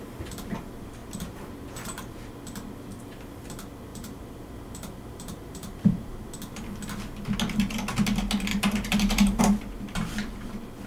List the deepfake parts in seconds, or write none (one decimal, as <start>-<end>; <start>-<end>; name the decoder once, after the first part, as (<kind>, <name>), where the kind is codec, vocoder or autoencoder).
3.9-6.3 (vocoder, BigVGAN v2); 8.5-9.4